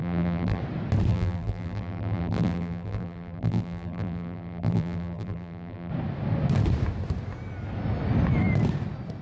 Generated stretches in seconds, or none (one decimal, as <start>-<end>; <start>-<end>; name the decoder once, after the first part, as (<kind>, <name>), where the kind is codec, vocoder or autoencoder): 0.0-0.6 (vocoder, BigVGAN v2); 1.1-5.9